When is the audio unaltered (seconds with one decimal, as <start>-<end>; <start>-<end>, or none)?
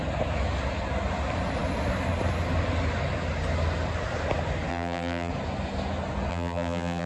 0.0-4.7; 5.3-6.3